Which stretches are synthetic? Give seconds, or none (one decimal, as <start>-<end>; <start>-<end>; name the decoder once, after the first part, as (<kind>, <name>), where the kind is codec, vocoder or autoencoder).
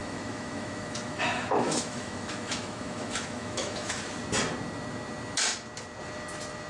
0.0-4.0 (autoencoder, DAC-VAE)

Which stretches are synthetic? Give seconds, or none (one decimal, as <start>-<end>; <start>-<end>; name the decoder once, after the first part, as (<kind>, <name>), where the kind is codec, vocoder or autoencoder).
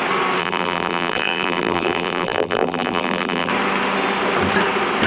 0.4-3.5 (vocoder, BigVGAN v2)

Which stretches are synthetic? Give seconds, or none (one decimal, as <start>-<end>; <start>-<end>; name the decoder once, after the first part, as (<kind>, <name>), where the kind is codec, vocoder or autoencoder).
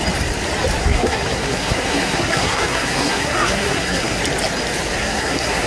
0.8-4.2 (codec, SNAC); 5.0-5.7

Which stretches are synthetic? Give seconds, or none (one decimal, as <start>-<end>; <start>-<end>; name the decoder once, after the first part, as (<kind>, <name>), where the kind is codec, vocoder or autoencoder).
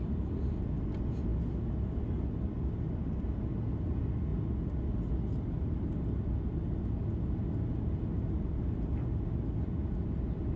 none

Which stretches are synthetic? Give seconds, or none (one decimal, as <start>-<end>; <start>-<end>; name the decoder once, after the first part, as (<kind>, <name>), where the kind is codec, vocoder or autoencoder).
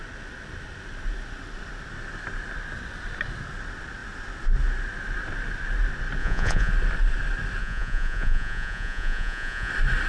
6.2-6.7 (vocoder, Vocos); 7.6-9.7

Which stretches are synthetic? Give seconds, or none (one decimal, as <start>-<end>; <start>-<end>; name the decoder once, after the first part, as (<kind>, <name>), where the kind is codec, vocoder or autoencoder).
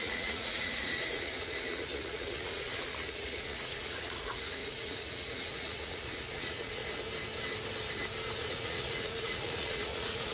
0.0-6.8 (vocoder, Vocos); 8.5-10.3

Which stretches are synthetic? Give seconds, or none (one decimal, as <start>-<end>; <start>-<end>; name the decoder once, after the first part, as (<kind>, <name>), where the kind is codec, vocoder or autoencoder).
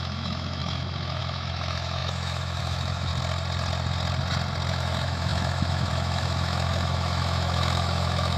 0.0-3.1 (autoencoder, DAC-VAE); 4.7-8.4